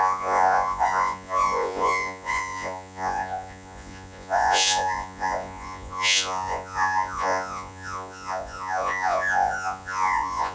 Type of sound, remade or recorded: remade